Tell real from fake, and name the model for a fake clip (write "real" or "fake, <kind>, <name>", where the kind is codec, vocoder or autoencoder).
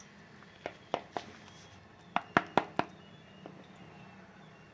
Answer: real